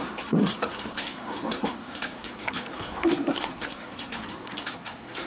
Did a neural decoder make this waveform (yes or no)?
yes